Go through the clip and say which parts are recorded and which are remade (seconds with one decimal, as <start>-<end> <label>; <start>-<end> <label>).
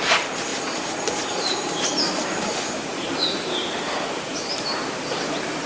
0.0-0.5 recorded; 0.5-3.9 remade; 3.9-4.8 recorded; 4.8-5.7 remade